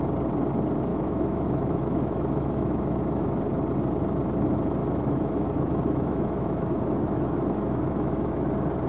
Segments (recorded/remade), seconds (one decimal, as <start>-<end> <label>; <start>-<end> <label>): 0.0-0.9 recorded; 0.9-3.4 remade; 3.4-4.8 recorded; 4.8-8.5 remade; 8.5-8.9 recorded

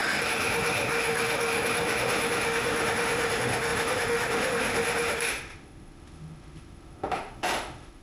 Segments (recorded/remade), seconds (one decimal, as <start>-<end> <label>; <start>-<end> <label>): 0.0-8.0 remade

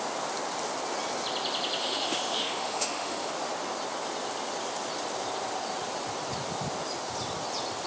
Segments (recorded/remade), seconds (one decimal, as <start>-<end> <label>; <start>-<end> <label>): 0.0-1.8 recorded; 1.8-3.3 remade; 3.3-7.9 recorded

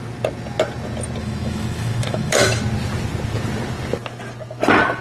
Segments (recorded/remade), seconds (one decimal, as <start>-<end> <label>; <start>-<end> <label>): 0.0-1.2 recorded; 1.2-2.6 remade; 2.6-5.0 recorded